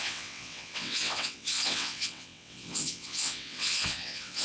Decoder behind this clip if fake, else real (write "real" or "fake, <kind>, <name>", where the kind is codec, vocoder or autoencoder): fake, vocoder, WaveNeXt